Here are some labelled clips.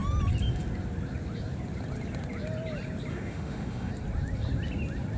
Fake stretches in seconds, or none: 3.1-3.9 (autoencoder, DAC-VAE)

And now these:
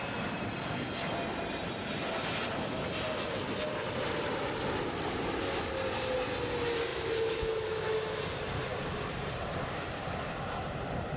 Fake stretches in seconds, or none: 6.9-8.2 (autoencoder, DAC-VAE)

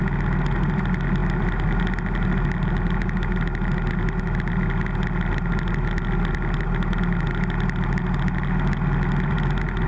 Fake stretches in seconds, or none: none

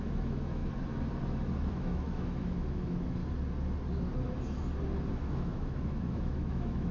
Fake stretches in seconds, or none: 0.0-0.6 (autoencoder, DAC-VAE); 1.7-3.2; 5.1-6.9

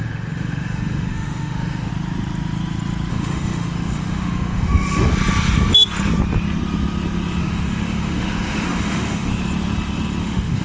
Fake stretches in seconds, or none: 0.0-1.9 (autoencoder, DAC-VAE); 3.1-5.1; 7.4-9.3; 10.2-10.6

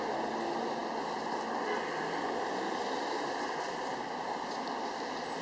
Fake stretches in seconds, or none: none

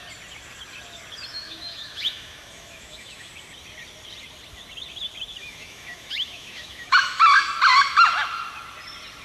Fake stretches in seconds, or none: 1.3-3.3 (autoencoder, DAC-VAE); 5.4-7.2

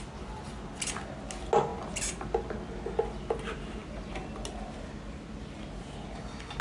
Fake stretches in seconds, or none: none